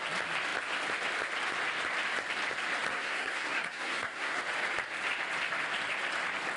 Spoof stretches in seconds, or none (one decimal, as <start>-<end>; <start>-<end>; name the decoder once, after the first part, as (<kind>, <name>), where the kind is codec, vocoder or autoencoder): 2.9-4.4 (codec, SNAC)